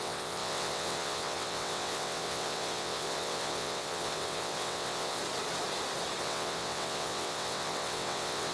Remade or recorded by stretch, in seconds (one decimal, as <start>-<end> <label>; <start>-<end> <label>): 0.0-5.2 remade; 5.2-6.2 recorded; 6.2-8.5 remade